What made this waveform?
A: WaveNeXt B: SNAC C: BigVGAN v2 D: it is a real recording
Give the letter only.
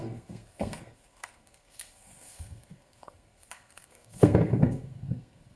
B